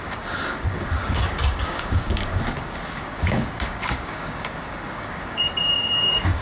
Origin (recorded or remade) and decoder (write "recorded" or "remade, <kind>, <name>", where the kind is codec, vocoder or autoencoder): remade, codec, DAC